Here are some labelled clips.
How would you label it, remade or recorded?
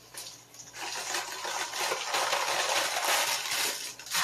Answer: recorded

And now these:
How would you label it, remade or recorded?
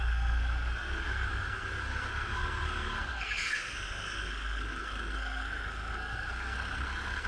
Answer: remade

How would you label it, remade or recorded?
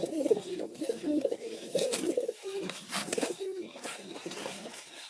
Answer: remade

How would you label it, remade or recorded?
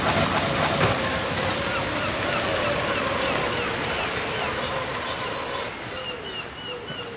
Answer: recorded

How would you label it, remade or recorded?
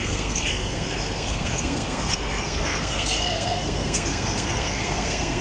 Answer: remade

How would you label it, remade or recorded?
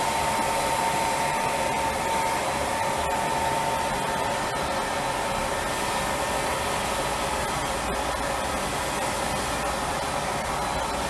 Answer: recorded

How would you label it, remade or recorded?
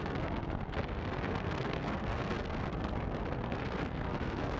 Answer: remade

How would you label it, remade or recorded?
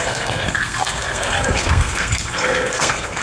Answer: remade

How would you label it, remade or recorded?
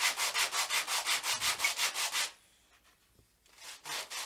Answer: recorded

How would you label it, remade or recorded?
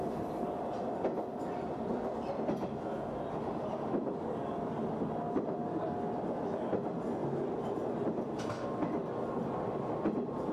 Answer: recorded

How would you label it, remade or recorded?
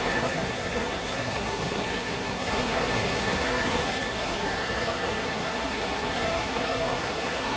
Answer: remade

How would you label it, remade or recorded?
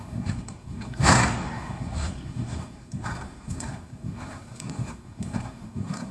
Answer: remade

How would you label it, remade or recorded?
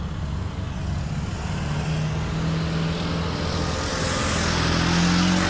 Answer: recorded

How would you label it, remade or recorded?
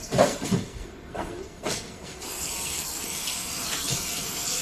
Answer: remade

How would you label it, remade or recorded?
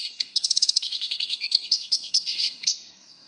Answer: remade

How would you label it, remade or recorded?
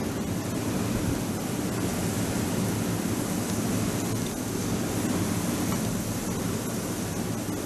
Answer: recorded